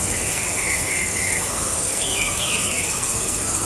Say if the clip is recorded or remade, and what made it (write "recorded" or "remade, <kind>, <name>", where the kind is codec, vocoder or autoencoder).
remade, codec, SNAC